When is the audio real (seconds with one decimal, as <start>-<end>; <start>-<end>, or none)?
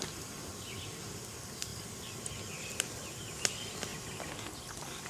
0.0-5.1